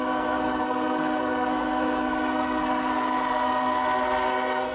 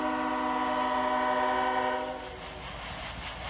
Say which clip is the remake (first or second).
first